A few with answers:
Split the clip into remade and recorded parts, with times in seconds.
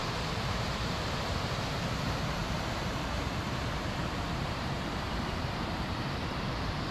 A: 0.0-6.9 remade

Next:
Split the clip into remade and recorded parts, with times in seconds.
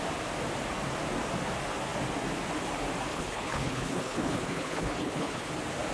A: 0.0-3.1 recorded; 3.1-5.5 remade; 5.5-5.9 recorded